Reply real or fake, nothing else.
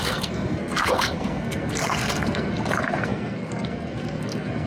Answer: fake